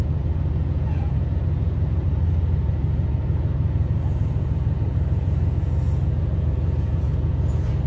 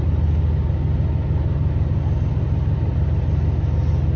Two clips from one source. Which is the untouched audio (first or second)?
second